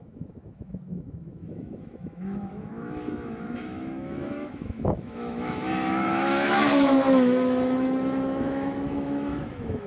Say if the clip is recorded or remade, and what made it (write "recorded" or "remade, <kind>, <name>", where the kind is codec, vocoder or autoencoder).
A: remade, autoencoder, DAC-VAE